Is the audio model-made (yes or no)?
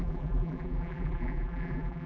yes